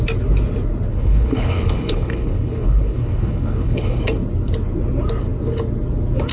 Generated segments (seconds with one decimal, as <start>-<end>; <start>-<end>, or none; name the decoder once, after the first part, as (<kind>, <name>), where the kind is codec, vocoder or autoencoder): 0.9-4.0 (codec, HILCodec)